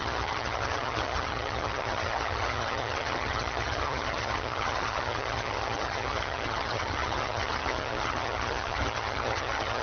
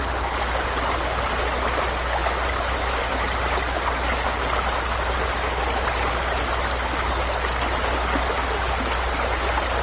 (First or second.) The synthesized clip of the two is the first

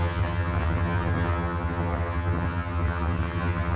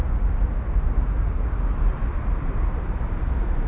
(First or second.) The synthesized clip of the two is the first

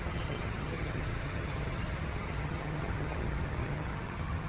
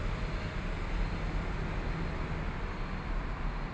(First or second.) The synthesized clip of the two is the first